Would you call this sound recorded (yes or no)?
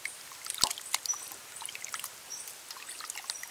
no